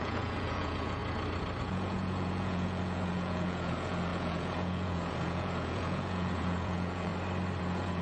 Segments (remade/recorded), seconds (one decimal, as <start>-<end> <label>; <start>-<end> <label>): 0.0-1.0 remade; 1.0-1.6 recorded; 1.6-7.1 remade; 7.1-7.6 recorded; 7.6-8.0 remade